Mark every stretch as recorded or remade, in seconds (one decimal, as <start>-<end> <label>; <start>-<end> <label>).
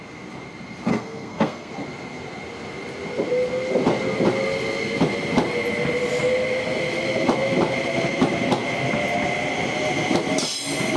0.0-0.9 recorded; 0.9-1.7 remade; 1.7-11.0 recorded